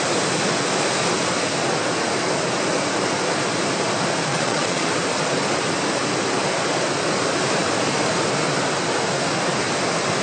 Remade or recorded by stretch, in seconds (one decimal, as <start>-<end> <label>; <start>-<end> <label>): 0.0-4.3 recorded; 4.3-4.9 remade; 4.9-10.2 recorded